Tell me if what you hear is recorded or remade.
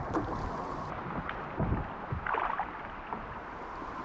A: recorded